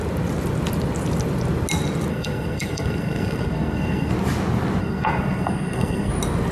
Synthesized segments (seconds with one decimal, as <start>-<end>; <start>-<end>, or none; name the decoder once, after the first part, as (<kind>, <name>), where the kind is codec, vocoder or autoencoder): 2.1-4.1 (codec, SNAC); 4.8-6.1